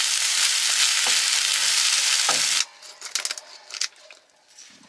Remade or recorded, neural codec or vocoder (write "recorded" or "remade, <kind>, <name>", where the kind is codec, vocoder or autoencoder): recorded